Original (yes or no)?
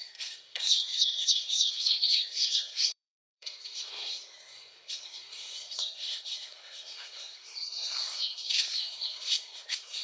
no